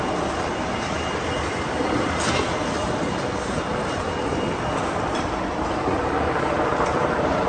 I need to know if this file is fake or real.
real